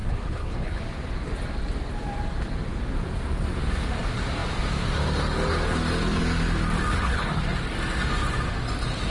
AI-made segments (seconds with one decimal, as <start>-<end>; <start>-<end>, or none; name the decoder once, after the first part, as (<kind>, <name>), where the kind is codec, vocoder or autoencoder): 0.0-0.8 (codec, HILCodec); 6.9-7.5